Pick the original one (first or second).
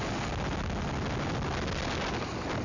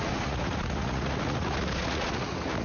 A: first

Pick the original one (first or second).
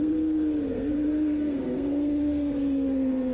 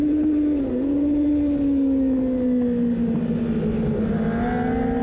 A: second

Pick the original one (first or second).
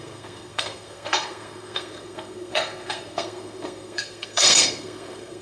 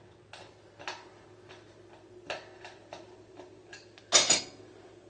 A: second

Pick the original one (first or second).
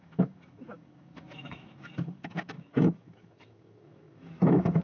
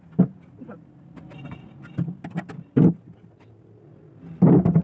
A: second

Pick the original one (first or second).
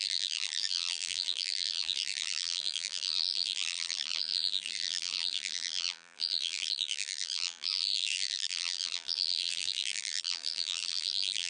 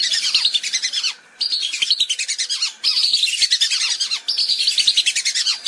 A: second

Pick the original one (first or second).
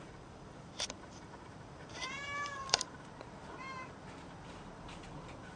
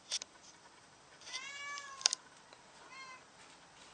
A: second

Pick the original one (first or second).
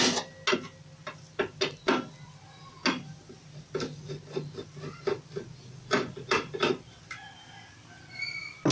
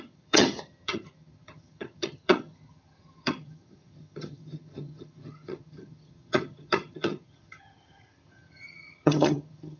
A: first